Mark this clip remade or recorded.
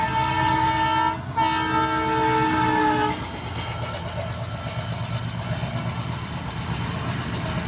recorded